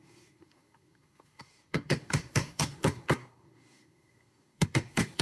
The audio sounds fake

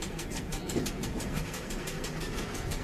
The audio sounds fake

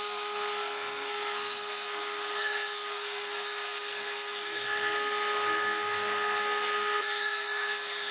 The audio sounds fake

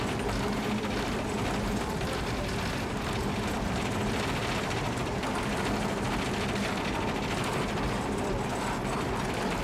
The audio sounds real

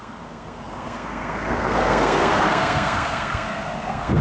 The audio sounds fake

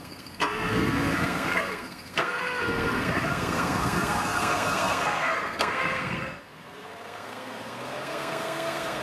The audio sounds fake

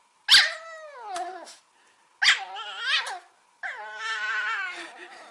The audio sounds real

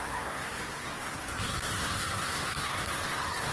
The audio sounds fake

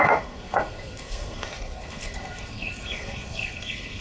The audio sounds fake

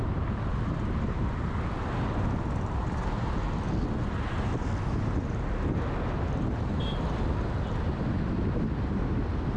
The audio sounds real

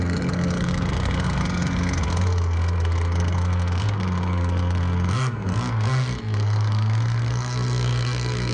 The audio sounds fake